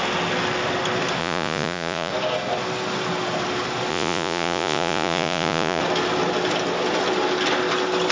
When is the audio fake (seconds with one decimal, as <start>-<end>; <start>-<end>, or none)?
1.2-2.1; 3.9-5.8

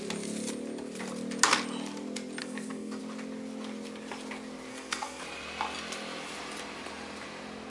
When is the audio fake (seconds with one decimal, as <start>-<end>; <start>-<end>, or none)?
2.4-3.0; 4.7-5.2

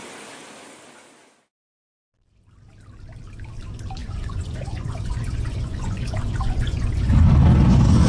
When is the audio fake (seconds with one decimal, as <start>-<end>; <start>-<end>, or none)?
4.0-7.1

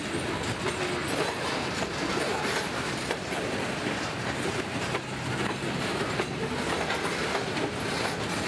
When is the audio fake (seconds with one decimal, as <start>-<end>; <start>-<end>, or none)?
2.3-6.4

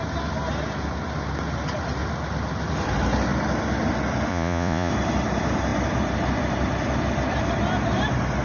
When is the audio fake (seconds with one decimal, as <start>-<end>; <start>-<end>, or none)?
4.3-4.9

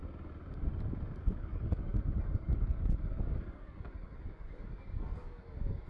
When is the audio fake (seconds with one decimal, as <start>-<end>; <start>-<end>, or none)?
1.2-5.9